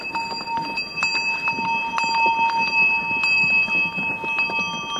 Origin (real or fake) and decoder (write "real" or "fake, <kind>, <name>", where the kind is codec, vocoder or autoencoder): real